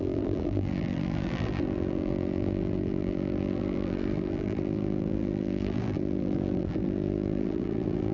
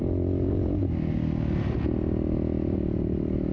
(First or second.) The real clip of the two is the second